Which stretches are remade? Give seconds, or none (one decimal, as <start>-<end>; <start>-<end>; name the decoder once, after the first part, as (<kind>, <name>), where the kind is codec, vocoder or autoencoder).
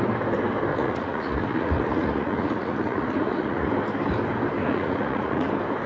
0.7-3.7 (vocoder, Vocos); 4.6-5.5